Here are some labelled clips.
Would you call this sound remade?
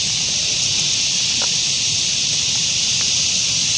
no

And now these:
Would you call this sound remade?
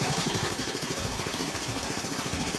yes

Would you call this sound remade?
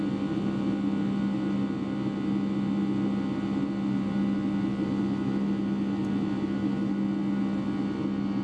no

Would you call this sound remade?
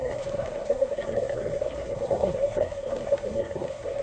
yes